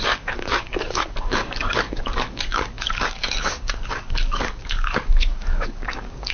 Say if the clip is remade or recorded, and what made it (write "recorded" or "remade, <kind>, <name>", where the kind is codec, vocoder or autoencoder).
remade, codec, DAC